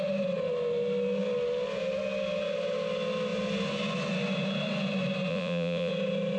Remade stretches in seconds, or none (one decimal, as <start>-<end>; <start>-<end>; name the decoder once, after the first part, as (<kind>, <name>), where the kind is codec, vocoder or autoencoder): 5.3-5.9 (vocoder, Vocos)